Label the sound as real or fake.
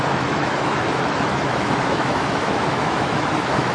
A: fake